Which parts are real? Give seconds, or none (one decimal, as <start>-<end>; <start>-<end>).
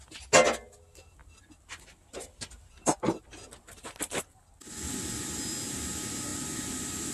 0.0-7.1